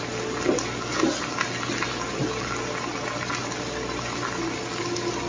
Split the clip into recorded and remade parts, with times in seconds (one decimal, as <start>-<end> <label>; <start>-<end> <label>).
0.0-5.3 recorded